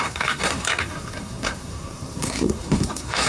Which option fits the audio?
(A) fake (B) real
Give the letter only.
A